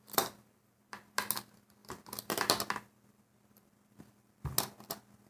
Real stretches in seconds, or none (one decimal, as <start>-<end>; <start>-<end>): 0.0-5.3

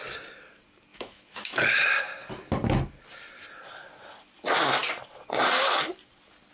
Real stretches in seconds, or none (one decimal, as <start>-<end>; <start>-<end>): 0.0-0.9; 1.8-6.5

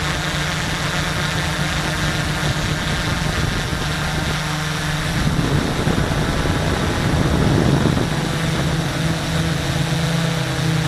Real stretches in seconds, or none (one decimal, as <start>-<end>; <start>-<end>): 0.0-10.9

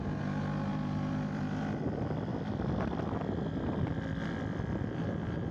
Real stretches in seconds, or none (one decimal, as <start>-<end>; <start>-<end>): 0.0-0.7; 1.4-2.3; 3.8-5.5

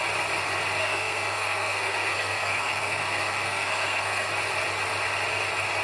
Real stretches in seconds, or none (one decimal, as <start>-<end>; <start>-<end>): 0.0-0.8; 4.3-5.8

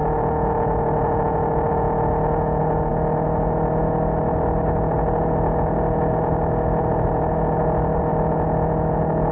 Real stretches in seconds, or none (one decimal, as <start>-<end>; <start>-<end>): 0.0-9.3